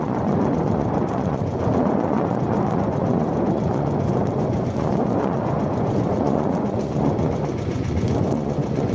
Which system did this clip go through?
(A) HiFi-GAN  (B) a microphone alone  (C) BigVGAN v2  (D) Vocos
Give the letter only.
D